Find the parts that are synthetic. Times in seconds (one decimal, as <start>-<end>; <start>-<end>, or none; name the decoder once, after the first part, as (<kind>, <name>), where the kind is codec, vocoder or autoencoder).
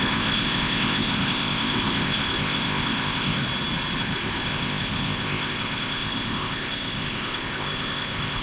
0.0-3.4 (codec, ZipCodec); 4.0-8.4